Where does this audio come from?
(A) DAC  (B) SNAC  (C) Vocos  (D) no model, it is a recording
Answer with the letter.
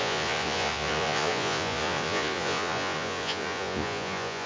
C